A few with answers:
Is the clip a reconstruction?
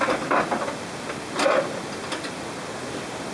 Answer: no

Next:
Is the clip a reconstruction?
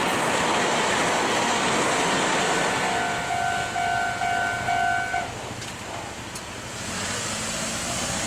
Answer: no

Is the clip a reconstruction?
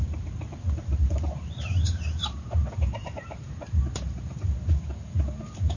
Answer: yes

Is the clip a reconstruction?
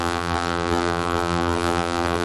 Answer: yes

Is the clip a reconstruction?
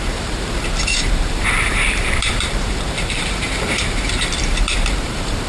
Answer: yes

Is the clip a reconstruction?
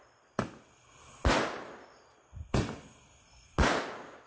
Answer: no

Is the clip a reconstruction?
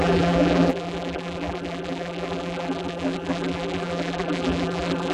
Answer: yes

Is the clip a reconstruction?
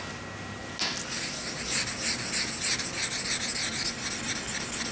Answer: no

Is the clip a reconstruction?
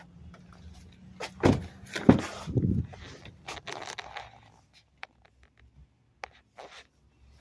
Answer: no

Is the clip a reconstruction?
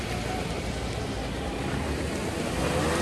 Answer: no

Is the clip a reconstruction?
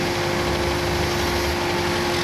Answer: no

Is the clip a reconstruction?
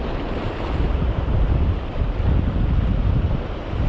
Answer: no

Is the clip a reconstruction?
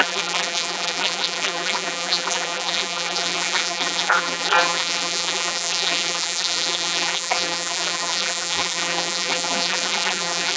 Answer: yes